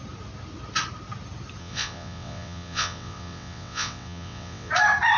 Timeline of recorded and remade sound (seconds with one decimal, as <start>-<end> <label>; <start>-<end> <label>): 0.0-1.6 recorded; 1.6-4.7 remade; 4.7-5.2 recorded